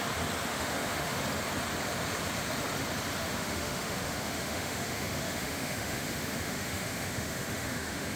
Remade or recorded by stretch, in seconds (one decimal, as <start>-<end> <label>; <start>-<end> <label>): 0.0-0.5 recorded; 0.5-1.2 remade; 1.2-3.2 recorded; 3.2-8.2 remade